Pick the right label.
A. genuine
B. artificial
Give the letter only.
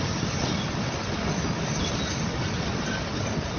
A